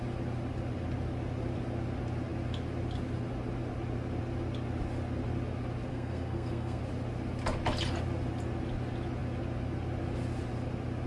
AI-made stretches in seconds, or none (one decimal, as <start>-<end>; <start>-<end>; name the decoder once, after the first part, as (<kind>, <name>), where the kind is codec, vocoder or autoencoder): 5.9-6.8 (codec, SNAC)